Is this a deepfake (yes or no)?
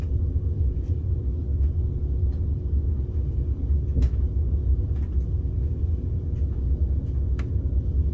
no